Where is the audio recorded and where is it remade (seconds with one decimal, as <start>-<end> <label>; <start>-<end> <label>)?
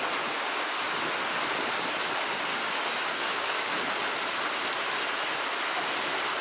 0.0-2.5 recorded; 2.5-3.7 remade; 3.7-6.4 recorded